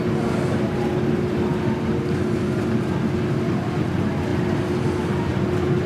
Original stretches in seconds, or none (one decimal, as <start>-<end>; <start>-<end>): 0.0-4.3; 4.9-5.9